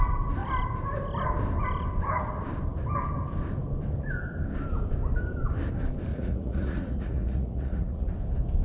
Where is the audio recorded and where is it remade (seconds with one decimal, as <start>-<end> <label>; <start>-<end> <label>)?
0.0-6.1 recorded; 6.1-8.1 remade; 8.1-8.6 recorded